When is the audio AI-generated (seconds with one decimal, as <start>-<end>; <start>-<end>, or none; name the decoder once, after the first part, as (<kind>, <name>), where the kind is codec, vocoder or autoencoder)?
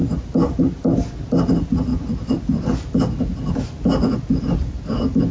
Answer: none